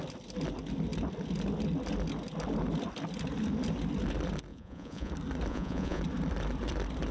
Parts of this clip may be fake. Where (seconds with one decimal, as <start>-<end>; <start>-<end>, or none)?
4.5-5.1; 5.5-6.0